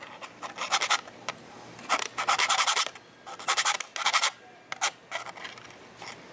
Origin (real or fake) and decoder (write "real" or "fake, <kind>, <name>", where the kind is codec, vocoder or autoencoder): real